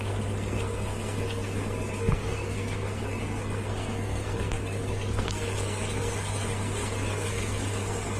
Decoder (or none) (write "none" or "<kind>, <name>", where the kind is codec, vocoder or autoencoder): codec, SNAC